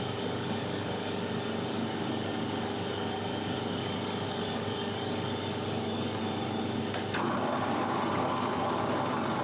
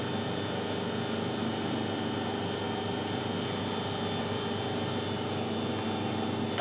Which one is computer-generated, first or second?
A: first